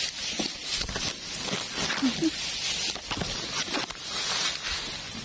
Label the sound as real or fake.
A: real